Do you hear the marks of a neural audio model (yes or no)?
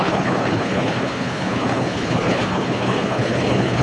yes